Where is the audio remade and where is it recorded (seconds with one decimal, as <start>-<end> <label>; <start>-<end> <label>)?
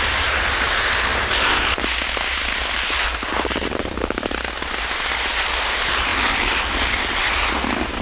0.0-8.0 recorded